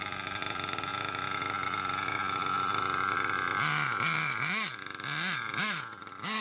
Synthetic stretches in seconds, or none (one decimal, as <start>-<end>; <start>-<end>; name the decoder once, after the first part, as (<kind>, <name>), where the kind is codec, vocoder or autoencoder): none